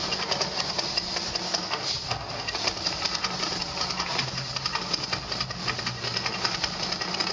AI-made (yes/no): no